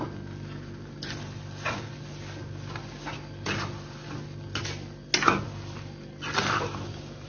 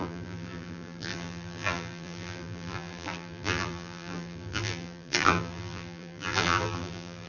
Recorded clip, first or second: first